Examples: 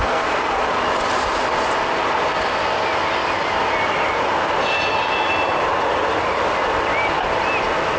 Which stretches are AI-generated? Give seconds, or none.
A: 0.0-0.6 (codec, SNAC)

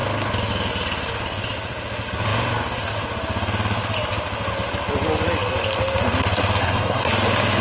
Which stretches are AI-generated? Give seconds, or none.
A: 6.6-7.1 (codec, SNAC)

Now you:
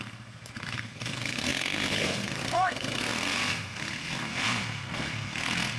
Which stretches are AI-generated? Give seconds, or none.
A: 0.0-5.8 (codec, SNAC)

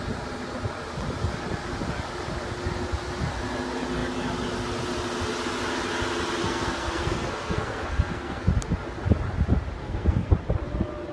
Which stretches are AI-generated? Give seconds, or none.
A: 6.4-8.5 (codec, SNAC); 9.8-10.3

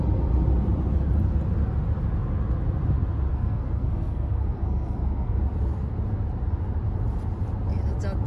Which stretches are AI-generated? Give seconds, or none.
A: 3.3-5.4 (codec, SNAC)